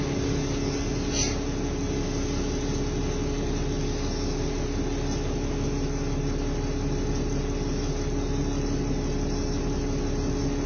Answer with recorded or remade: recorded